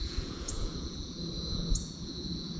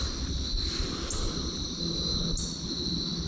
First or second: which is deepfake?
first